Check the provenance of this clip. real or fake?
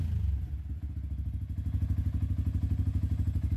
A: real